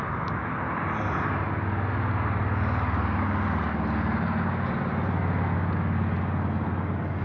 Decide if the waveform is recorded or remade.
recorded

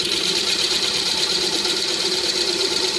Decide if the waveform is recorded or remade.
remade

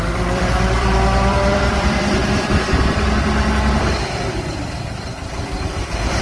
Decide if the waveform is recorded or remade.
remade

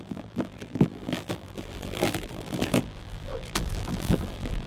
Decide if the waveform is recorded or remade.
remade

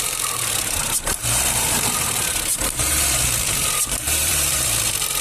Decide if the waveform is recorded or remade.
remade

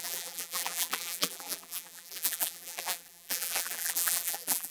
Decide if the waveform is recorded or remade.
remade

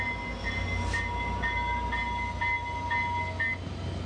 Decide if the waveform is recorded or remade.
recorded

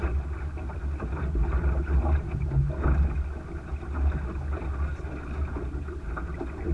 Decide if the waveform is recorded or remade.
recorded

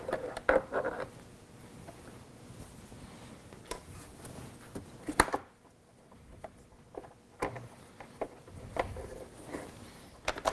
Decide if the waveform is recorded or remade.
recorded